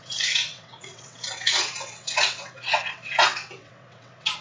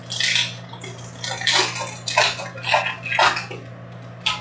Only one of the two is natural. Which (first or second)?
second